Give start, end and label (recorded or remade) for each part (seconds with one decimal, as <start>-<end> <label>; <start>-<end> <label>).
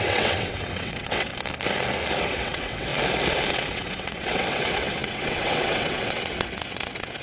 0.0-1.3 remade; 1.3-2.2 recorded; 2.2-2.9 remade; 2.9-3.5 recorded; 3.5-7.2 remade